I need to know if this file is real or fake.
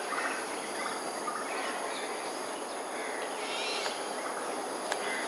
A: real